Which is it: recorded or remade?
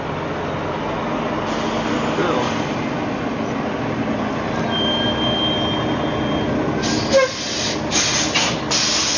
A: recorded